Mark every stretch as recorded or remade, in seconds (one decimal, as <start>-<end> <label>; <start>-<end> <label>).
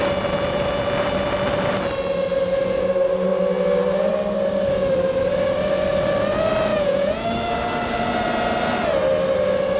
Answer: 0.0-6.7 recorded; 6.7-7.3 remade; 7.3-9.8 recorded